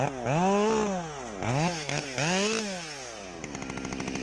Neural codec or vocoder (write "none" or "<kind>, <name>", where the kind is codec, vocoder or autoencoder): none